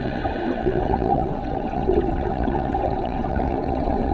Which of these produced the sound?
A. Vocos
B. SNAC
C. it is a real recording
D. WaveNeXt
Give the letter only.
D